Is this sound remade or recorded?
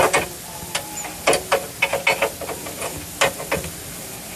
recorded